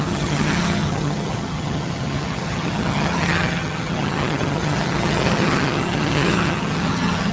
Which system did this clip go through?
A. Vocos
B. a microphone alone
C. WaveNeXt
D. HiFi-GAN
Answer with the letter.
D